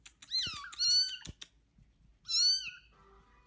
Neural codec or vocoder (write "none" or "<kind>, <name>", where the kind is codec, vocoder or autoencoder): none